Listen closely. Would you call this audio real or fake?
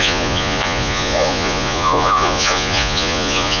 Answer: fake